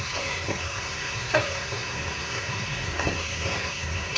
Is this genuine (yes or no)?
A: no